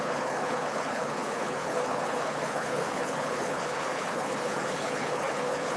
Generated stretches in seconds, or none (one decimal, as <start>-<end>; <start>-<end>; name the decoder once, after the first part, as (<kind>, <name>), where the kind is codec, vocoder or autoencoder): 0.0-5.8 (codec, HILCodec)